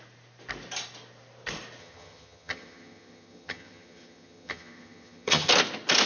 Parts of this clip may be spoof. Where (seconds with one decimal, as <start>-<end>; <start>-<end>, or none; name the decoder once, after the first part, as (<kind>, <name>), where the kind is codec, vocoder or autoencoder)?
1.8-5.5 (vocoder, HiFi-GAN)